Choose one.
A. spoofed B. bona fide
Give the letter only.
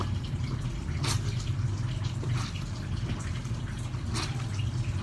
B